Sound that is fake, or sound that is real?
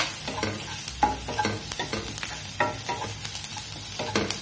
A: real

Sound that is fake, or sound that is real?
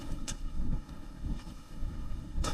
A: fake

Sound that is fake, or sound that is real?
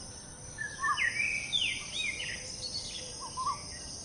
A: real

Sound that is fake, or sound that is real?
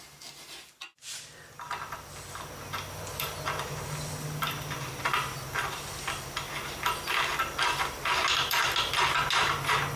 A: real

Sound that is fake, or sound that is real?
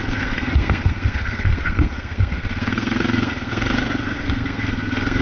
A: fake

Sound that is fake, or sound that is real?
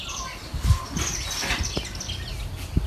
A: real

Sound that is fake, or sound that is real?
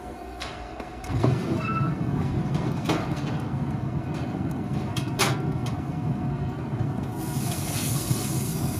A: fake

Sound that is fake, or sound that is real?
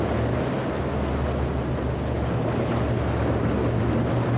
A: real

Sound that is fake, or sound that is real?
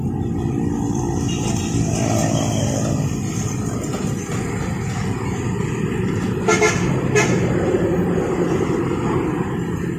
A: real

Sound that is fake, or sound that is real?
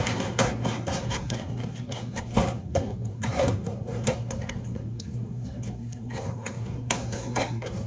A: fake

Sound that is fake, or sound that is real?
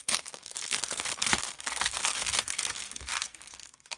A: fake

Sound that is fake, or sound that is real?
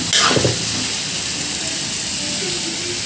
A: real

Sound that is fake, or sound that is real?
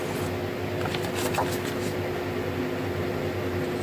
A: real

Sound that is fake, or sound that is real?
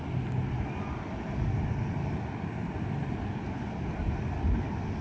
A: real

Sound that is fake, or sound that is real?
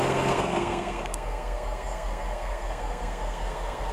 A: fake